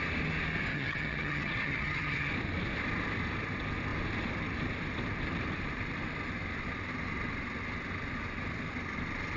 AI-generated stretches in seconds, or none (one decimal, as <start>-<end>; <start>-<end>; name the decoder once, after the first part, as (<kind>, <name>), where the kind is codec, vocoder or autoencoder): 0.7-2.3 (vocoder, HiFi-GAN)